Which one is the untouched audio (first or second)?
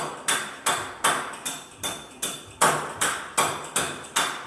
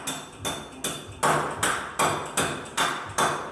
second